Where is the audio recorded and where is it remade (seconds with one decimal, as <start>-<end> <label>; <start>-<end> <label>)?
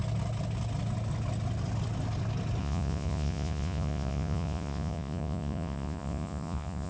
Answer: 0.0-2.6 recorded; 2.6-6.9 remade